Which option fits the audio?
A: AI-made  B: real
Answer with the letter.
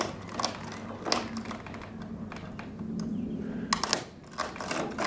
B